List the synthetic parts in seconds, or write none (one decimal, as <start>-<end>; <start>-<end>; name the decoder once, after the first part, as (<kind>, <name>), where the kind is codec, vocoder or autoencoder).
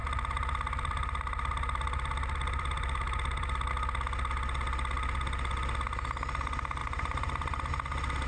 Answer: 0.0-3.7 (vocoder, BigVGAN v2); 6.8-7.7